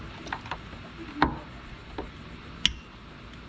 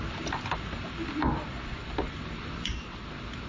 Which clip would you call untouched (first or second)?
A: first